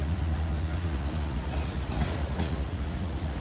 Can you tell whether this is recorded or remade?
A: remade